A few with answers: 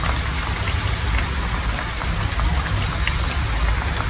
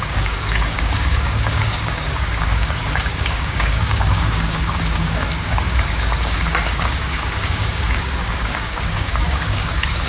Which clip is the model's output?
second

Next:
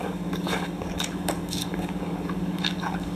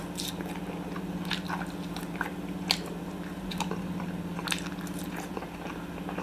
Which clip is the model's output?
first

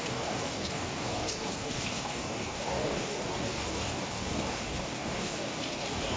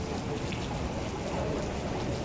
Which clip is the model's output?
first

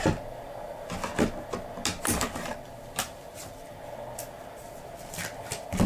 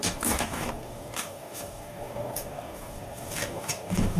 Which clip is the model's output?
second